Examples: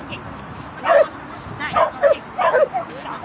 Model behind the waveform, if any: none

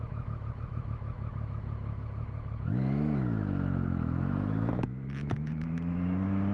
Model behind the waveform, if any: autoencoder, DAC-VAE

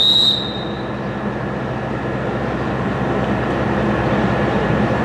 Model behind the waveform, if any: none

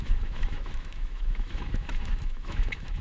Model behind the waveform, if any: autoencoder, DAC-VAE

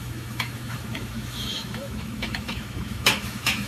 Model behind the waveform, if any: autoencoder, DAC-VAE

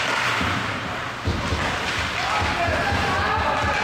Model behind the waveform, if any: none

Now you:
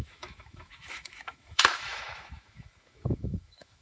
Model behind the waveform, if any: autoencoder, DAC-VAE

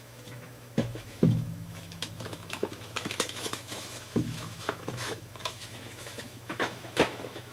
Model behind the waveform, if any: autoencoder, DAC-VAE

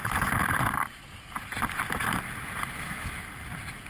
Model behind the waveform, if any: none